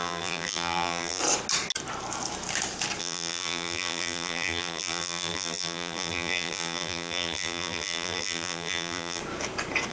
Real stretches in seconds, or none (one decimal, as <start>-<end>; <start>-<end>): 1.2-3.0; 9.2-9.9